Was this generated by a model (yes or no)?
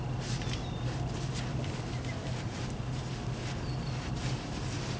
no